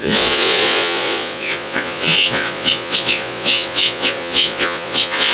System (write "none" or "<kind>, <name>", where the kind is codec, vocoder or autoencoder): vocoder, Vocos